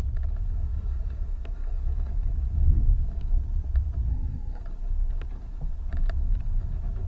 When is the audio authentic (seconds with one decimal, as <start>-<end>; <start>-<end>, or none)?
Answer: 0.0-4.1; 4.6-7.1